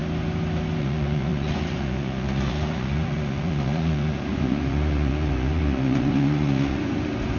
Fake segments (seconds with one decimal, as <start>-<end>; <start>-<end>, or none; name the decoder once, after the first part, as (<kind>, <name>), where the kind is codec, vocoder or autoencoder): 0.8-7.4 (vocoder, Vocos)